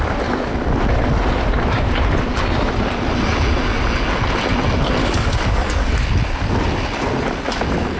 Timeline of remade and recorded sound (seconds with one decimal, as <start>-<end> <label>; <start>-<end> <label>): 0.0-5.0 recorded; 5.0-5.9 remade; 5.9-8.0 recorded